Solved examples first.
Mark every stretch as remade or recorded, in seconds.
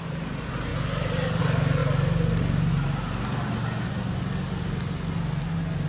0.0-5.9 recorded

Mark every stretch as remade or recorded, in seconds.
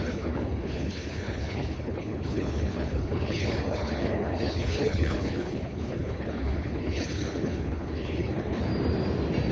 0.0-8.7 remade; 8.7-9.5 recorded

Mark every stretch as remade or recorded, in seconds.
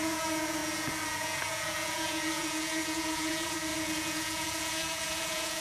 0.0-5.6 remade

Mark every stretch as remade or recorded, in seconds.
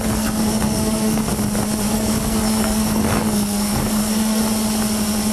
0.0-1.3 remade; 1.3-1.9 recorded; 1.9-4.4 remade; 4.4-5.3 recorded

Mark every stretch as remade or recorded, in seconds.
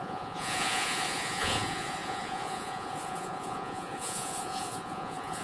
0.0-5.4 remade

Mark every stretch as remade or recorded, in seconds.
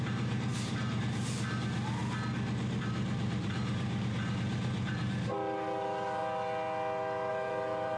0.0-2.0 remade; 2.0-2.8 recorded; 2.8-6.2 remade; 6.2-7.3 recorded; 7.3-8.0 remade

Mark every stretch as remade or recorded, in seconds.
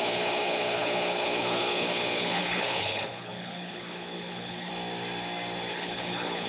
0.0-4.7 remade; 4.7-5.7 recorded; 5.7-6.5 remade